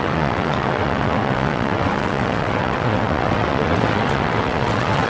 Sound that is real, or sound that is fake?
fake